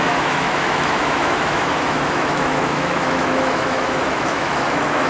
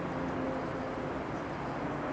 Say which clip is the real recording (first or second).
second